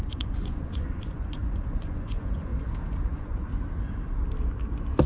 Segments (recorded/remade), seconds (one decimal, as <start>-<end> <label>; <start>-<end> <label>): 0.0-2.5 remade; 2.5-3.1 recorded; 3.1-3.5 remade; 3.5-5.1 recorded